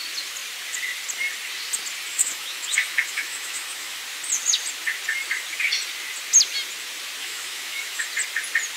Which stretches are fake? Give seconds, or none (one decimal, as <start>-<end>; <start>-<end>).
2.1-4.0; 7.2-8.0